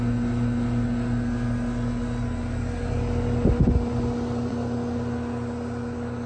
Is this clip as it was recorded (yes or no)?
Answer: yes